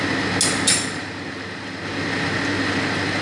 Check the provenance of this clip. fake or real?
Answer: real